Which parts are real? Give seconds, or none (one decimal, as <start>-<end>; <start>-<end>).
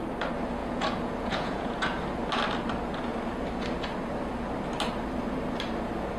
0.0-0.6; 2.0-6.2